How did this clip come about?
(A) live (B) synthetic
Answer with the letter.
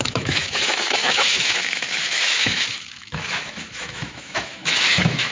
B